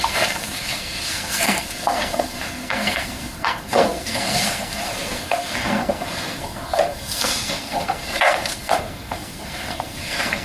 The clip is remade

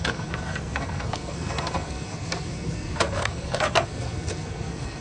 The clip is remade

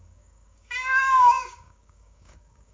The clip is remade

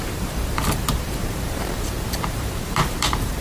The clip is remade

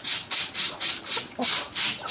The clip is recorded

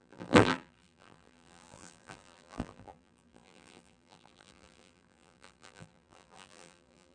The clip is remade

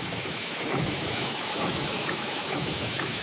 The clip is remade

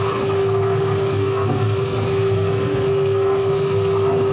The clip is remade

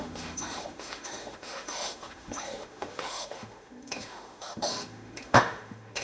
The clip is remade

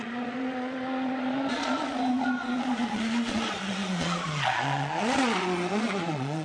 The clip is remade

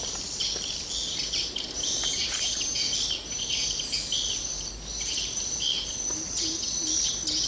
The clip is recorded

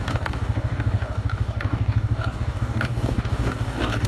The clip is remade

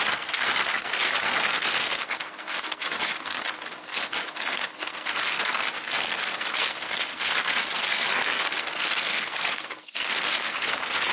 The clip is remade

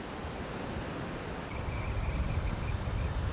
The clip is recorded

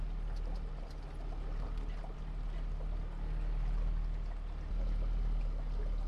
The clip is recorded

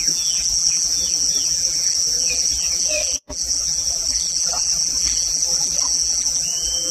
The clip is remade